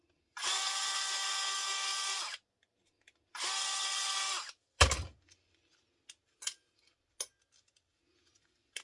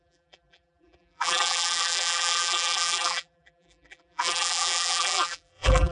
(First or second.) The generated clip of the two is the second